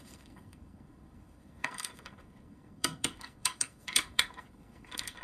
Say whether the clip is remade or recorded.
remade